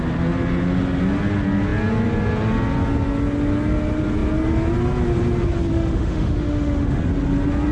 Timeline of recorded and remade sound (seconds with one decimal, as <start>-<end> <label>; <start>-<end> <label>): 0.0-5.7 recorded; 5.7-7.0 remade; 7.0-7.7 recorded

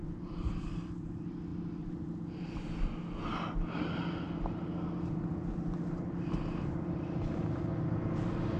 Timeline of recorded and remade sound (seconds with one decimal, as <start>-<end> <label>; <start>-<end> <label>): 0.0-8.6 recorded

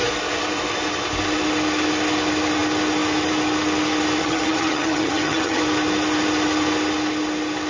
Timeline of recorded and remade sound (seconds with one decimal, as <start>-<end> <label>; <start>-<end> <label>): 0.0-4.2 recorded; 4.2-5.6 remade; 5.6-7.7 recorded